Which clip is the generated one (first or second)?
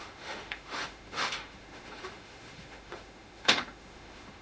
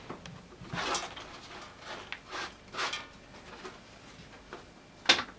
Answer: first